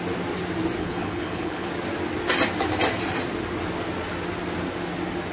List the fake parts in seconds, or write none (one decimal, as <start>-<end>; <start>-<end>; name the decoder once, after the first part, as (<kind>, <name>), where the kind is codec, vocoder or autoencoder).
0.8-1.7 (codec, HILCodec)